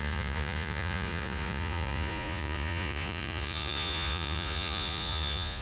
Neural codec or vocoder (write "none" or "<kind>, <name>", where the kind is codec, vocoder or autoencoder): vocoder, Vocos